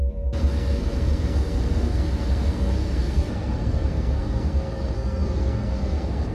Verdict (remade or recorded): remade